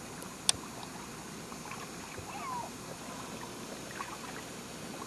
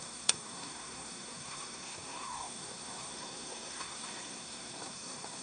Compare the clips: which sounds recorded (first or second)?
first